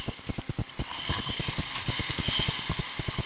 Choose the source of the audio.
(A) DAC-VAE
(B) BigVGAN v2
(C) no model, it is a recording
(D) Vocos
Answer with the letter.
C